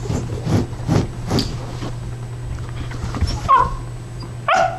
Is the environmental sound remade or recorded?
recorded